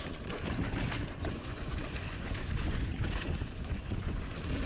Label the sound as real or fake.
fake